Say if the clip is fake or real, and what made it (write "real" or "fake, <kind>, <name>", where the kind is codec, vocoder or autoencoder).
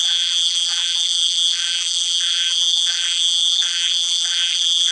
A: fake, vocoder, BigVGAN v2